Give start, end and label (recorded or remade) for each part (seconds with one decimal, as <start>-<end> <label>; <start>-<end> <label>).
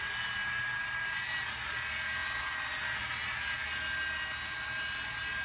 0.0-5.4 recorded